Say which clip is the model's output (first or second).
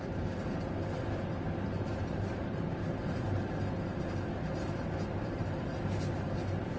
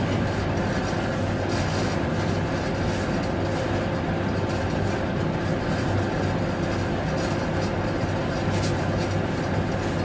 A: first